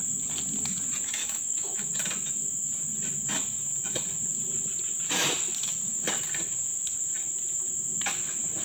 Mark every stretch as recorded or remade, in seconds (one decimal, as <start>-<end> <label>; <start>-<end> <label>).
0.0-1.2 recorded; 1.2-1.9 remade; 1.9-8.6 recorded